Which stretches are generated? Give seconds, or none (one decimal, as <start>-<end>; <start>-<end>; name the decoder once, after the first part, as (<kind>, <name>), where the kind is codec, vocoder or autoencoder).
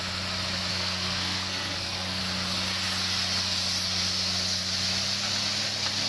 0.7-2.2 (codec, SNAC)